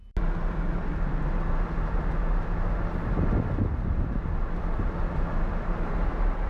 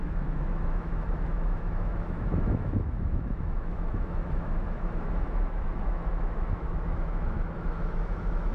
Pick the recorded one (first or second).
first